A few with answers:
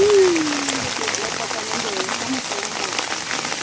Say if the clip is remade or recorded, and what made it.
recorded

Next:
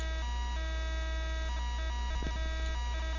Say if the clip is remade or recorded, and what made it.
recorded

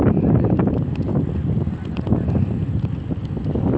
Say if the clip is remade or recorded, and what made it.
recorded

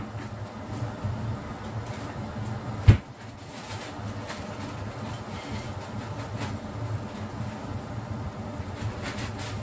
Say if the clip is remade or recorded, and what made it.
recorded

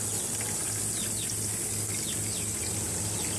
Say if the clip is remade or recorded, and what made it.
recorded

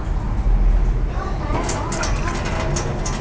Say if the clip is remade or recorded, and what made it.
recorded